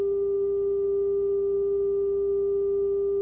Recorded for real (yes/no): yes